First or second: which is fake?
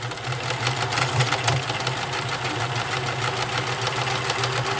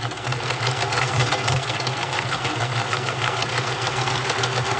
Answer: second